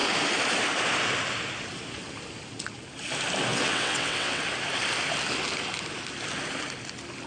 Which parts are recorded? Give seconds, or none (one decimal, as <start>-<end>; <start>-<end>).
0.0-3.5; 4.4-7.3